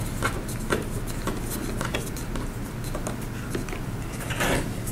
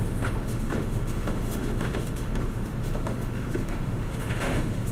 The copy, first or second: second